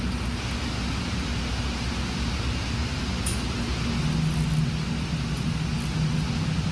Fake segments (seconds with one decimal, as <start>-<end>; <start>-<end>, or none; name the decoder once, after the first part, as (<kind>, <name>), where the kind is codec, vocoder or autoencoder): none